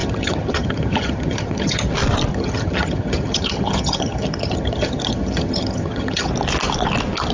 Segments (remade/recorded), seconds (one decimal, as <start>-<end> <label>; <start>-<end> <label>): 0.0-1.9 remade; 1.9-2.3 recorded; 2.3-6.3 remade; 6.3-7.3 recorded